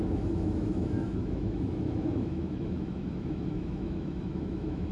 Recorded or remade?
remade